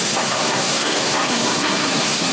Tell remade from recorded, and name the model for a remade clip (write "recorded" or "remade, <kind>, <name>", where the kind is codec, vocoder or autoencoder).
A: remade, codec, SNAC